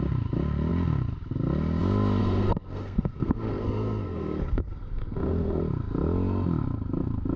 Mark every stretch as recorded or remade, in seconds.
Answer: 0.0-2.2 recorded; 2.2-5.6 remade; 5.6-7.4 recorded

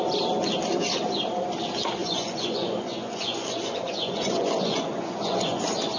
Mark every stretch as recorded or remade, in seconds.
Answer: 0.0-2.0 recorded; 2.0-5.6 remade; 5.6-6.0 recorded

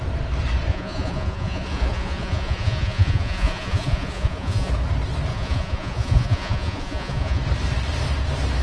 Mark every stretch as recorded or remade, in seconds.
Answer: 0.0-0.7 recorded; 0.7-4.7 remade; 4.7-5.3 recorded; 5.3-7.4 remade; 7.4-8.6 recorded